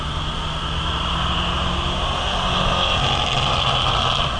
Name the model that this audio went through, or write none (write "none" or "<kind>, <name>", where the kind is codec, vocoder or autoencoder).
none